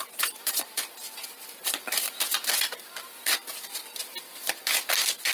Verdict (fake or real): real